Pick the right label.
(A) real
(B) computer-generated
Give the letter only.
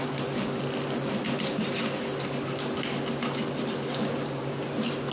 A